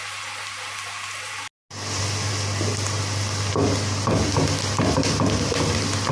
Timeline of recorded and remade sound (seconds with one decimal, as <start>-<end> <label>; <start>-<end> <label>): 0.0-6.1 recorded